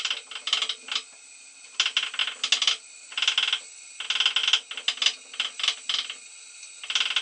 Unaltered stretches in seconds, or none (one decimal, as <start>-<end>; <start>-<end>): 0.0-7.2